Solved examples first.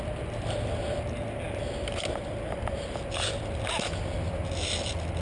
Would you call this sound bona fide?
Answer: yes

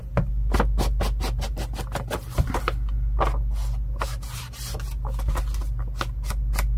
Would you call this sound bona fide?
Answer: yes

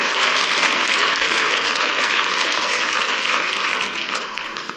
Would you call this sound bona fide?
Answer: no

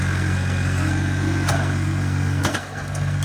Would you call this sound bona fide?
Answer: no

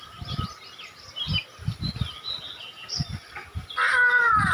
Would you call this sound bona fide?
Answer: yes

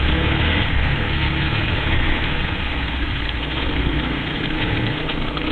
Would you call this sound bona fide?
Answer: no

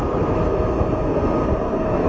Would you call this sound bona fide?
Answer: no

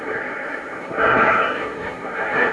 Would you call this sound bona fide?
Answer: no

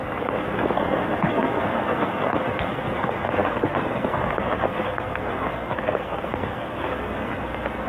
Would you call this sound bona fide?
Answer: no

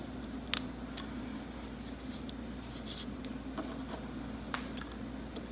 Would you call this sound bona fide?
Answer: yes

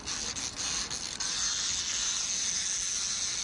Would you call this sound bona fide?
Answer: yes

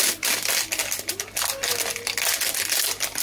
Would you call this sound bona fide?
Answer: yes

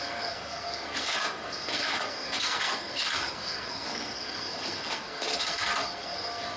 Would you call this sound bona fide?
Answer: no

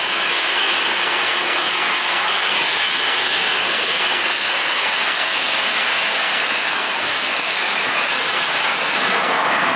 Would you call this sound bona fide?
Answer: no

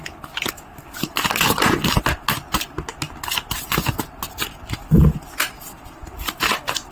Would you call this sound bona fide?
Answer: yes